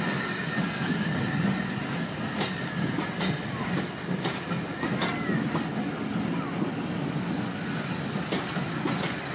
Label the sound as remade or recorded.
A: recorded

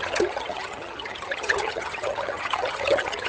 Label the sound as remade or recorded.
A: remade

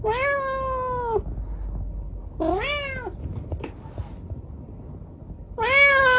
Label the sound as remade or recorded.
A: recorded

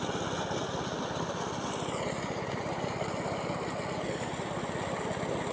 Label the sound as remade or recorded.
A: recorded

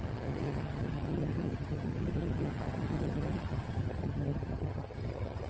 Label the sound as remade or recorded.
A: remade